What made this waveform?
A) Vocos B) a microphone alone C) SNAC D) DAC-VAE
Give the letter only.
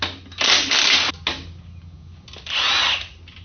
B